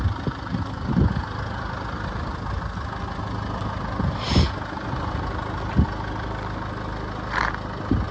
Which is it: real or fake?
real